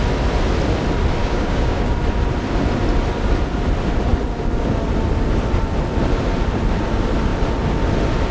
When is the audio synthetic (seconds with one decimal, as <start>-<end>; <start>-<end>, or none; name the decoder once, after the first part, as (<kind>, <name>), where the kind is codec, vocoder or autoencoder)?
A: 1.2-1.9 (codec, DAC)